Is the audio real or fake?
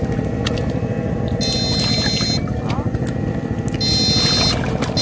real